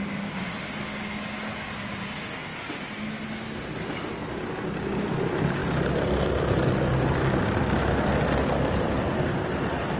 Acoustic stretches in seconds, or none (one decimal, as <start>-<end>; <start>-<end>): 0.0-10.0